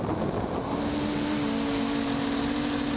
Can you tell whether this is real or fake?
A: real